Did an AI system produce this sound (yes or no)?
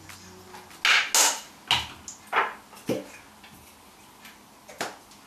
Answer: no